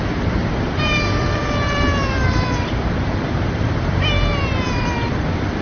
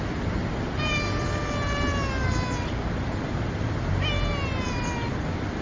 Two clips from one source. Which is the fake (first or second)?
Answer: first